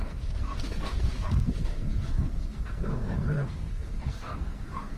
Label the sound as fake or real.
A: fake